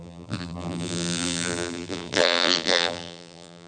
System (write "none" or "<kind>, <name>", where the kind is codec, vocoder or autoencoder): vocoder, BigVGAN v2